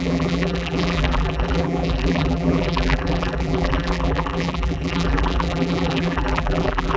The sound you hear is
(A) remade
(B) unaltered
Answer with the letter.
A